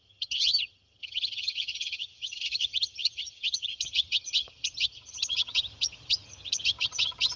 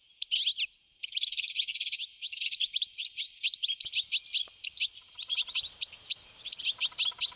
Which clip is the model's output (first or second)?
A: first